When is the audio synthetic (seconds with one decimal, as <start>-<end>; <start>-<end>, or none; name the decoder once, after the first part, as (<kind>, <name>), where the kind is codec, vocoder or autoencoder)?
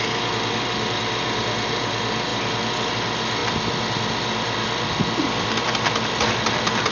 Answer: none